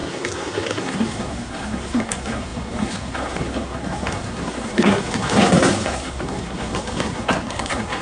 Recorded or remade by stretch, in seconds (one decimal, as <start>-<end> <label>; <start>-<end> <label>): 0.0-8.0 remade